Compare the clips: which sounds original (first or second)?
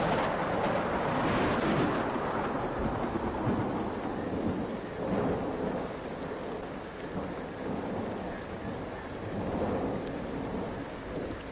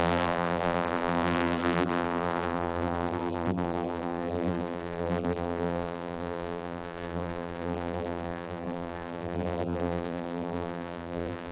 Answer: first